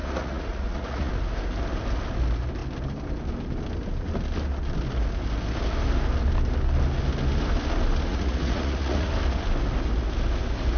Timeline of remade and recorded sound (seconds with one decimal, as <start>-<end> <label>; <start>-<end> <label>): 0.0-1.1 remade; 1.1-8.1 recorded; 8.1-9.1 remade; 9.1-10.8 recorded